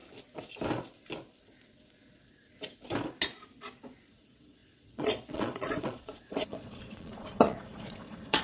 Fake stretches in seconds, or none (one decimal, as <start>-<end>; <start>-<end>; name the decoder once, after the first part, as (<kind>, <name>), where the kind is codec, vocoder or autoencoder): 4.1-8.4 (vocoder, Vocos)